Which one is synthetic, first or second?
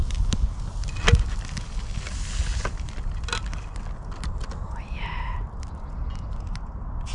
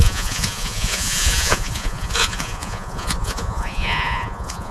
second